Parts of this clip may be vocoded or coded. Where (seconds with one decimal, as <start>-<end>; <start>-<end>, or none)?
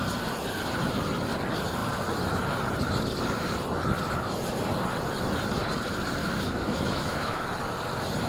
6.2-7.4